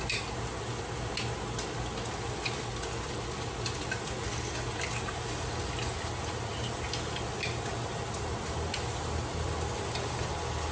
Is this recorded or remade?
recorded